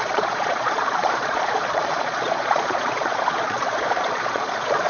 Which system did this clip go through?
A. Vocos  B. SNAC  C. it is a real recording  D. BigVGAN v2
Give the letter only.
A